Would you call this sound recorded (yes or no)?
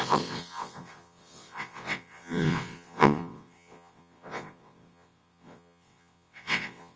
no